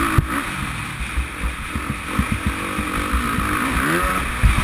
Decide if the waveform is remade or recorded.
recorded